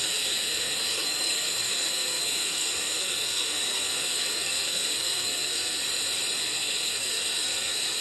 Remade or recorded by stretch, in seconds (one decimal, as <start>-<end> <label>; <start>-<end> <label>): 0.0-5.8 remade; 5.8-6.4 recorded; 6.4-8.0 remade